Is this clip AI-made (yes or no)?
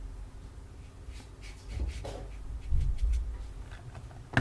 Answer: no